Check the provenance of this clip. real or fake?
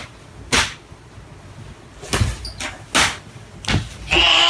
real